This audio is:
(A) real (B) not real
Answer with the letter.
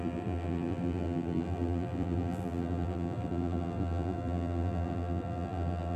B